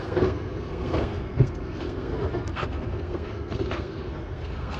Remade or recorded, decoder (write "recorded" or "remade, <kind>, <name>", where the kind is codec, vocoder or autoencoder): remade, codec, SNAC